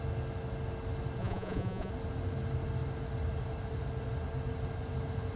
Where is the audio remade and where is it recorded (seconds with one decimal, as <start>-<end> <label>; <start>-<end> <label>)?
0.0-1.2 recorded; 1.2-1.9 remade; 1.9-5.4 recorded